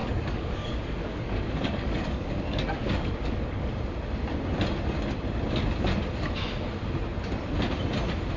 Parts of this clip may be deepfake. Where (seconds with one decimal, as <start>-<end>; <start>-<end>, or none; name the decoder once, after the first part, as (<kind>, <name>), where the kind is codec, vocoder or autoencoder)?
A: 0.0-3.7 (codec, DAC)